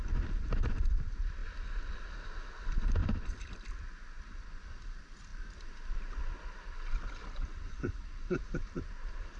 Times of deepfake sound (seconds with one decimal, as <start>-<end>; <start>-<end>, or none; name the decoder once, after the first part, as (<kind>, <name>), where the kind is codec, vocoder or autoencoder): 0.0-9.4 (vocoder, BigVGAN v2)